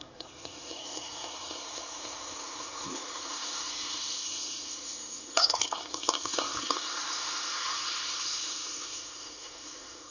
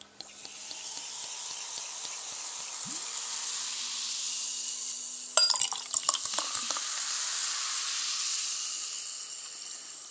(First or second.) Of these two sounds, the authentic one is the second